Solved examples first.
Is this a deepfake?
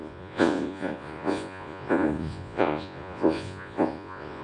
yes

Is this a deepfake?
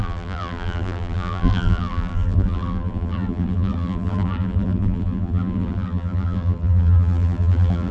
yes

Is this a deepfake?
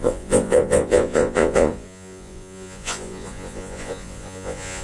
yes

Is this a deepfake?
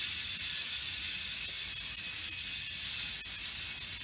no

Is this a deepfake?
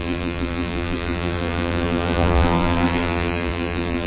yes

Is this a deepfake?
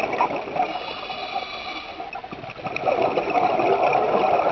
no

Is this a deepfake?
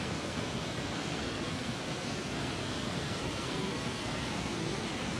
yes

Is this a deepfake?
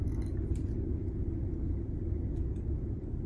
no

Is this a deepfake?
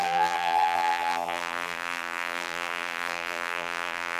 yes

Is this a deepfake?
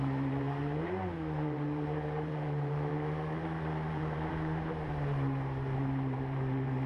yes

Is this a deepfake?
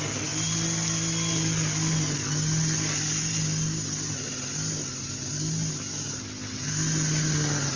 no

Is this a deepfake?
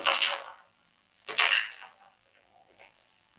yes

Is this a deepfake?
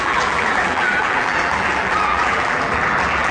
yes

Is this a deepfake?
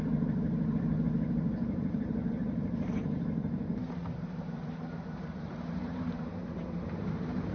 yes